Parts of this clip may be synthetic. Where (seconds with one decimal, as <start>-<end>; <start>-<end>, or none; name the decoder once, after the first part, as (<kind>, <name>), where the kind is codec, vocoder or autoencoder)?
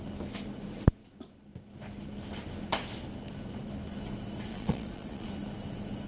4.5-5.3 (vocoder, Vocos)